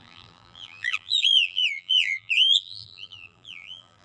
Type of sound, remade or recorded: remade